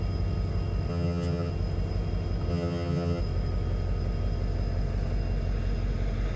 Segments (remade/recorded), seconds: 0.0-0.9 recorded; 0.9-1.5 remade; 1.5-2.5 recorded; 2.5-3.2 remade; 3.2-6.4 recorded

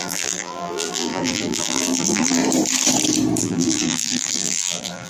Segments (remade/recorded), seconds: 0.0-2.4 remade; 2.4-3.4 recorded; 3.4-5.1 remade

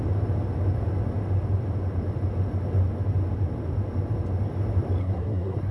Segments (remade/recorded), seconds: 0.0-5.0 recorded; 5.0-5.7 remade

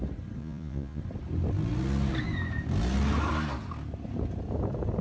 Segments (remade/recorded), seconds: 0.0-0.4 recorded; 0.4-1.0 remade; 1.0-5.0 recorded